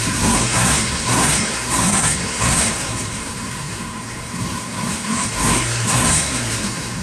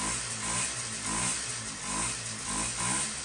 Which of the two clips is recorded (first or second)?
second